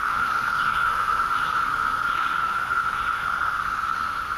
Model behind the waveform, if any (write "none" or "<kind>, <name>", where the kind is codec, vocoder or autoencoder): codec, SNAC